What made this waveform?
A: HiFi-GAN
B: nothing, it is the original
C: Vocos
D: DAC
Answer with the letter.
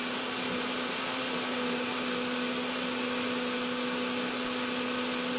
B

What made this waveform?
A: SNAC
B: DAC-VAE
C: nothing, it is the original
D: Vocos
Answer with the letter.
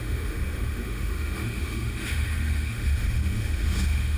B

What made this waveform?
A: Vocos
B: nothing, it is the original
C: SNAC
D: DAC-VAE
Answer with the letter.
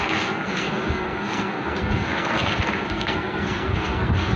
C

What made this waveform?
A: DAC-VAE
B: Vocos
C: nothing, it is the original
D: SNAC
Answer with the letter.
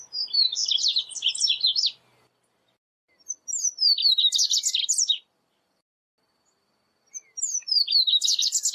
C